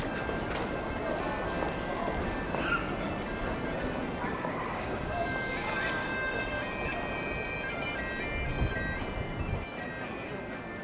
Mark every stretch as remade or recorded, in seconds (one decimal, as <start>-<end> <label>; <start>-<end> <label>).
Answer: 0.0-4.2 recorded; 4.2-5.1 remade; 5.1-6.0 recorded; 6.0-6.6 remade; 6.6-10.8 recorded